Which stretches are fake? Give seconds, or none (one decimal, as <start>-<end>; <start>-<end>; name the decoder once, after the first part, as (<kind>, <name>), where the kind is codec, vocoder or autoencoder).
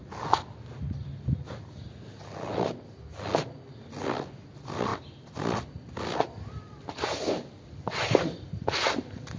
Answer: none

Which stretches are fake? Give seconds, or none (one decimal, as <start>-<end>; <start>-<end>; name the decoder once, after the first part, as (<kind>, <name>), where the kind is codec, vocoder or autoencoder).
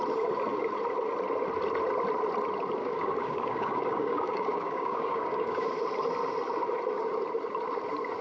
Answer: 2.8-5.7 (codec, DAC)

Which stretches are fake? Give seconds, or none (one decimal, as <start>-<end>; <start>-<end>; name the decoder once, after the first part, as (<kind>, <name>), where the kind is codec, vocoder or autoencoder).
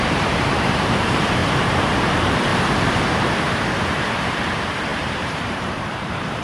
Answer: 0.0-6.4 (vocoder, BigVGAN v2)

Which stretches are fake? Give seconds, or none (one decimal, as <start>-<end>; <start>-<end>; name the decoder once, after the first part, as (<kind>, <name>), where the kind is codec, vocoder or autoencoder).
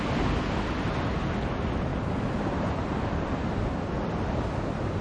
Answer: 1.9-3.6 (vocoder, BigVGAN v2)